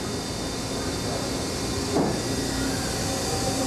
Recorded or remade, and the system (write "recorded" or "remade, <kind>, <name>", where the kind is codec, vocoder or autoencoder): recorded